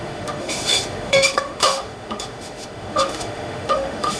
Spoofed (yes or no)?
yes